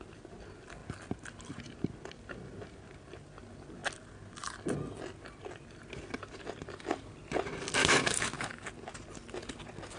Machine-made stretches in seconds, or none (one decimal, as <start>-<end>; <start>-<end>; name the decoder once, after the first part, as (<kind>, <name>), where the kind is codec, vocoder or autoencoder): 7.8-8.7 (autoencoder, DAC-VAE)